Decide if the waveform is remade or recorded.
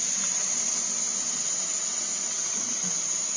recorded